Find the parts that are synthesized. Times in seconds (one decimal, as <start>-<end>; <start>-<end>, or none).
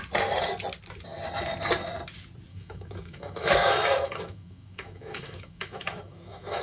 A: 2.5-6.6